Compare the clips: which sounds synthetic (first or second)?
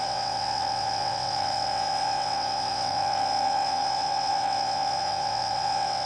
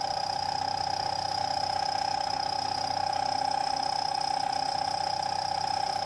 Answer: first